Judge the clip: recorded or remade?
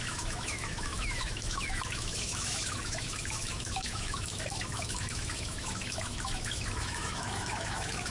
remade